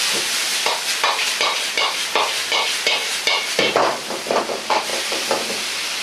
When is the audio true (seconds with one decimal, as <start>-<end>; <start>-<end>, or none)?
0.5-1.1; 3.0-4.4; 4.9-6.0

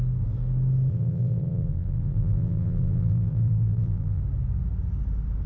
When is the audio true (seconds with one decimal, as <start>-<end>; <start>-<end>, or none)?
0.0-0.9; 4.2-5.5